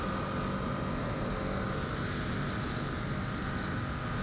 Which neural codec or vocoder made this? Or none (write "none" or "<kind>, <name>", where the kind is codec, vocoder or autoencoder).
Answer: none